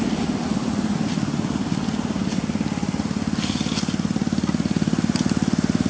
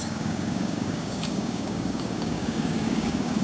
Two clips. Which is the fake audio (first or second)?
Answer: second